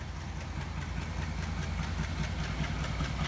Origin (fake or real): real